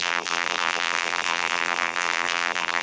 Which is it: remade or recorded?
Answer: remade